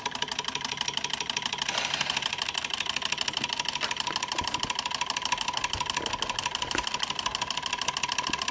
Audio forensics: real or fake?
real